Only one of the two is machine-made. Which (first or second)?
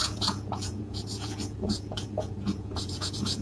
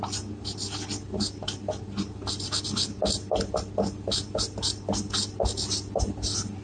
first